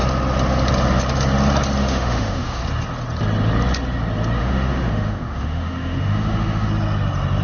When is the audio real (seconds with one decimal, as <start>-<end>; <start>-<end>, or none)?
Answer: 0.0-1.8; 2.6-4.4; 6.7-7.4